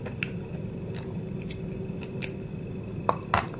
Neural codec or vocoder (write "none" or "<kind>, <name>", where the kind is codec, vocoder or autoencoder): none